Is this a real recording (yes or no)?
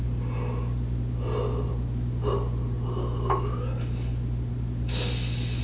yes